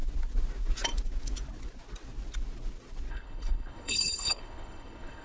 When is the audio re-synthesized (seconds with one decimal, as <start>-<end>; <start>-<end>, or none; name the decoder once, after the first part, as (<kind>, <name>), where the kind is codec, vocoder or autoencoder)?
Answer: 3.1-5.2 (codec, HILCodec)